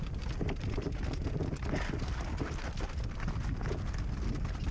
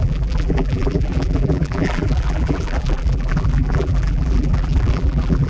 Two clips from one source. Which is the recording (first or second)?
first